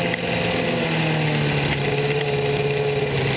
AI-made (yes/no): no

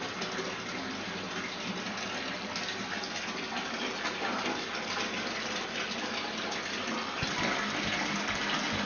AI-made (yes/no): no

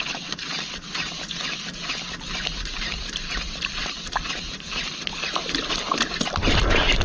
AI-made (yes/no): no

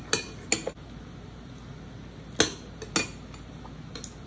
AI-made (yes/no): no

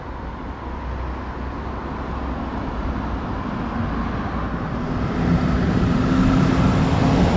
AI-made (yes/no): no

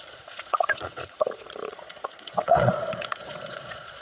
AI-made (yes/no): yes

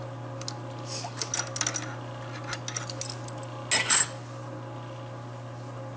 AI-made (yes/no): no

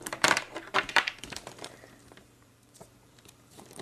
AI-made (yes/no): yes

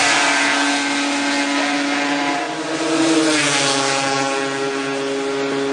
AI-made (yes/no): no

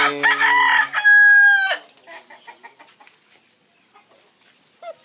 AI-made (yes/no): no